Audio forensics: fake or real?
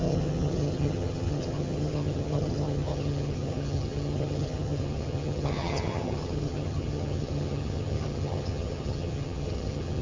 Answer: fake